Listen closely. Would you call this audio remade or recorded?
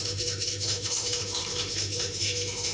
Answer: remade